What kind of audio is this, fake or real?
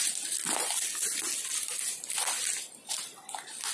real